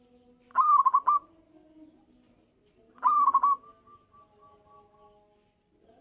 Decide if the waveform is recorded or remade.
recorded